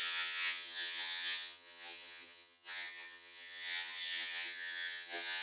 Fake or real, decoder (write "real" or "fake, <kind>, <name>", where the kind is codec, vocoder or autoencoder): fake, vocoder, HiFi-GAN